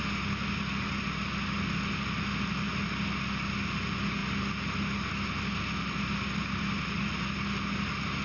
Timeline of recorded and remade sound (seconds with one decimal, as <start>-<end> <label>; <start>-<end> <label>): 0.0-8.2 recorded